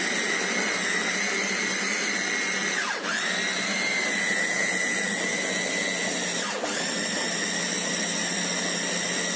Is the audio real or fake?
real